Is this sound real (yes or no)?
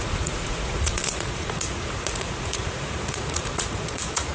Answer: no